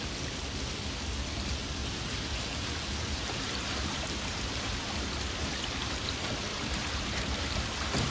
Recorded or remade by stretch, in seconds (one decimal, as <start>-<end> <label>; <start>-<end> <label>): 0.0-1.8 recorded; 1.8-4.9 remade; 4.9-6.5 recorded; 6.5-7.2 remade; 7.2-8.1 recorded